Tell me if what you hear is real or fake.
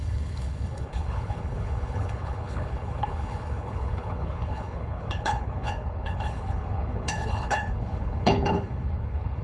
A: fake